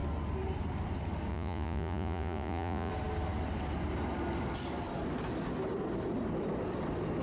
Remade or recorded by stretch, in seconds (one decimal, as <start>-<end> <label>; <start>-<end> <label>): 0.0-1.3 recorded; 1.3-2.9 remade; 2.9-7.2 recorded

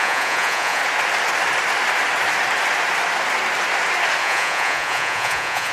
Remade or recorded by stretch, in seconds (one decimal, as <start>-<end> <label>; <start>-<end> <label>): 0.0-0.8 remade; 0.8-4.2 recorded; 4.2-5.7 remade

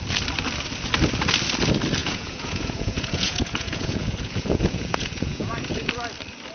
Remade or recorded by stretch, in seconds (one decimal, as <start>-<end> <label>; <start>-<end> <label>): 0.0-2.0 recorded; 2.0-5.9 remade; 5.9-6.5 recorded

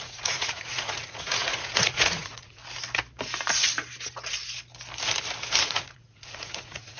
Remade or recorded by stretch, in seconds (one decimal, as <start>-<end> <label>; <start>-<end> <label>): 0.0-2.6 remade; 2.6-5.6 recorded; 5.6-7.0 remade

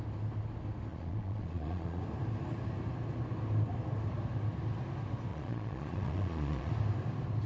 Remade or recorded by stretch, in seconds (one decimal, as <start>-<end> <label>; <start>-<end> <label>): 0.0-0.9 recorded; 0.9-2.0 remade; 2.0-5.3 recorded; 5.3-6.7 remade; 6.7-7.5 recorded

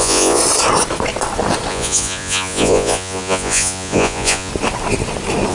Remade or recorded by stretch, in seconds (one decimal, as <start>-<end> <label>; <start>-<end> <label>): 0.0-0.4 remade; 0.4-1.7 recorded; 1.7-4.5 remade; 4.5-5.5 recorded

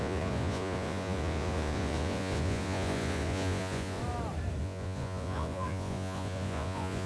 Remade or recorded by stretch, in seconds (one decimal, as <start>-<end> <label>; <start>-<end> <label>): 0.0-4.0 remade; 4.0-4.6 recorded; 4.6-7.1 remade